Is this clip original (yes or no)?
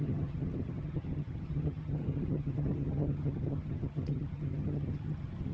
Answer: no